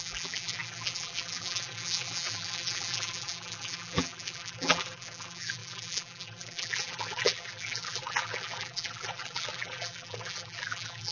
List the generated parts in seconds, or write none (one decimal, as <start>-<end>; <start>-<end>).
0.0-11.1